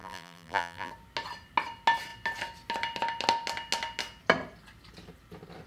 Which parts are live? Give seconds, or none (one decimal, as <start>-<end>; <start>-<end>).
0.9-5.7